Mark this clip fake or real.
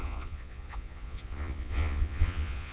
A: fake